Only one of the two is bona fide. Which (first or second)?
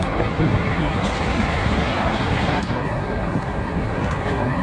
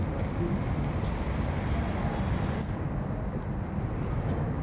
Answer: second